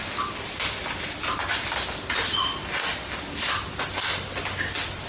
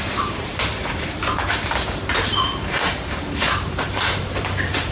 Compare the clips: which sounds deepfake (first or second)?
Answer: second